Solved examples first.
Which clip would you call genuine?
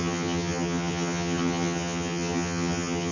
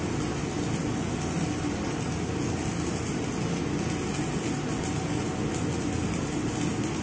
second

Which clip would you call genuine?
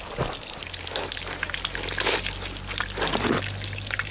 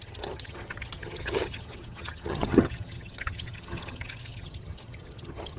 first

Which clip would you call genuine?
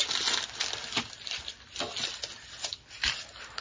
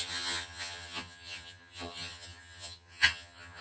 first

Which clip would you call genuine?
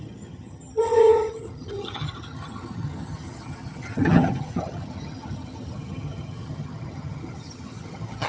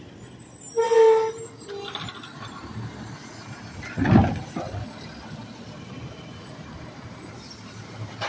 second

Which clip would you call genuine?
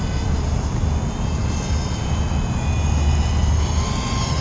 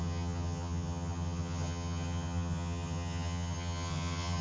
first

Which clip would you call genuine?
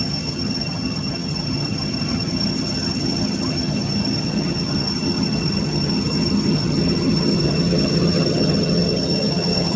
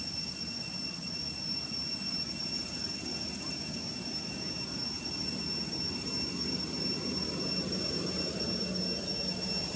second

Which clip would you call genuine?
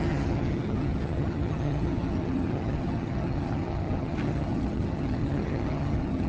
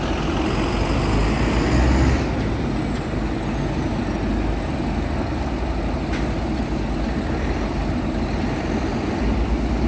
second